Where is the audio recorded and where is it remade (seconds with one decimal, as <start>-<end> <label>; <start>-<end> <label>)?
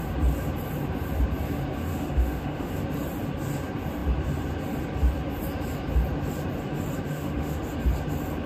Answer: 0.0-1.9 recorded; 1.9-2.7 remade; 2.7-7.1 recorded; 7.1-7.6 remade; 7.6-8.5 recorded